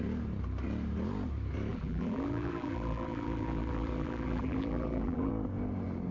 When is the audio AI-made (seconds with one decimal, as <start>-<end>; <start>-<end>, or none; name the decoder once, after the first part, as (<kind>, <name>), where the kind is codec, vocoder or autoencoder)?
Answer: 1.7-5.3 (vocoder, BigVGAN v2)